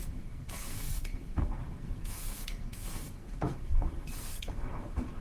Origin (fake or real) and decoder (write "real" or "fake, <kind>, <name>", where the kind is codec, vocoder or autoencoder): fake, codec, SNAC